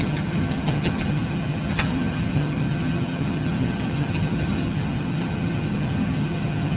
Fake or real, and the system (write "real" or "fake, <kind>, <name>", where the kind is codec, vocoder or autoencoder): fake, vocoder, HiFi-GAN